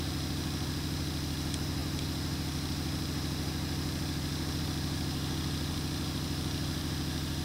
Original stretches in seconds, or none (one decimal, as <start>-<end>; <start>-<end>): 0.0-7.4